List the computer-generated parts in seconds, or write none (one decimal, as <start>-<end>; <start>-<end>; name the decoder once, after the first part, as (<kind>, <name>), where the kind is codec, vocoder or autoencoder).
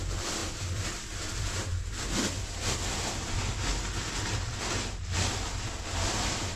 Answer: 0.4-1.6 (vocoder, BigVGAN v2); 2.2-3.5